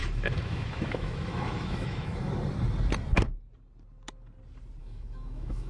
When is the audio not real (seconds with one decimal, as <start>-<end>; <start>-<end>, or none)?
0.0-2.3; 4.8-5.7